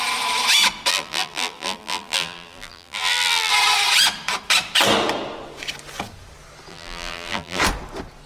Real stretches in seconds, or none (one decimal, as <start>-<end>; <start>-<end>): 0.0-0.9; 3.5-6.7; 7.6-8.3